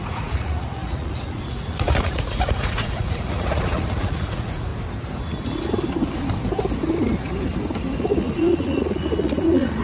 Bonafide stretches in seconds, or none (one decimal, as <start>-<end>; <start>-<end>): 4.7-8.0